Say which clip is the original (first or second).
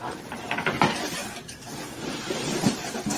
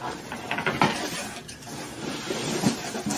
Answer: second